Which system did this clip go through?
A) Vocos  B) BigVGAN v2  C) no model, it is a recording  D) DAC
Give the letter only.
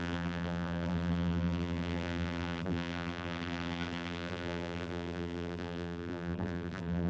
B